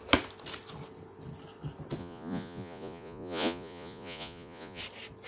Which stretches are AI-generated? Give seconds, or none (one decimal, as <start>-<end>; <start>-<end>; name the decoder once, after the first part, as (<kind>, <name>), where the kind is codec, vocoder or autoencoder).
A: 2.0-4.8 (vocoder, Vocos)